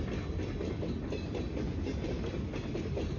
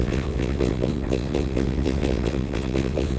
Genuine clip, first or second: first